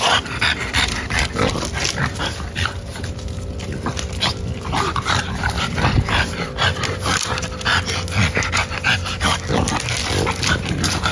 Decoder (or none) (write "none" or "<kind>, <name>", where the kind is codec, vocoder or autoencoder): none